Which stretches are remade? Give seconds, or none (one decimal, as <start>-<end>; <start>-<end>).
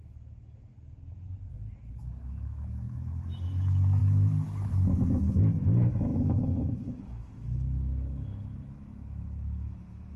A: 0.0-0.7; 2.0-10.2